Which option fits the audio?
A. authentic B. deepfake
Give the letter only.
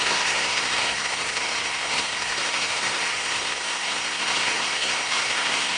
B